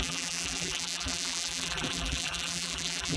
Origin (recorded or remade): remade